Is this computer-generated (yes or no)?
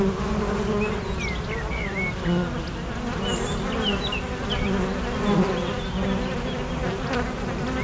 no